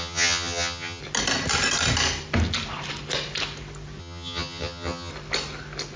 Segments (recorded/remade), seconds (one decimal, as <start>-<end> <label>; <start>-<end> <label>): 0.0-1.0 remade; 1.0-4.0 recorded; 4.0-5.1 remade; 5.1-6.0 recorded